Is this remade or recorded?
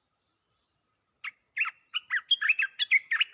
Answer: recorded